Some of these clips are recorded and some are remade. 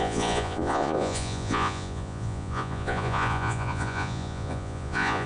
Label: remade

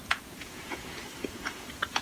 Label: remade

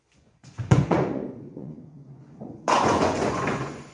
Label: remade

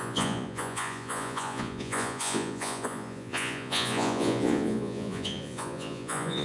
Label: remade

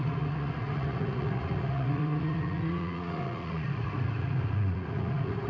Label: remade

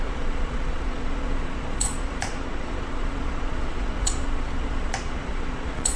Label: remade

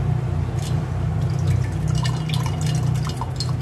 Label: recorded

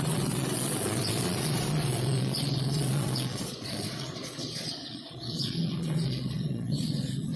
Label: remade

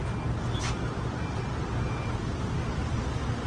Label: recorded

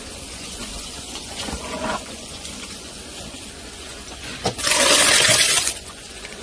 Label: remade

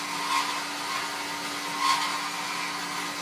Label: recorded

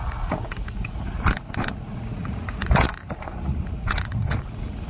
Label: remade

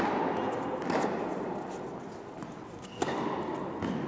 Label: recorded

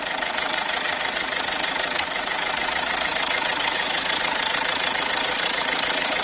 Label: remade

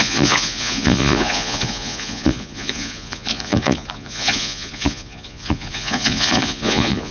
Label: remade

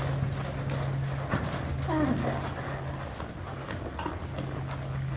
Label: recorded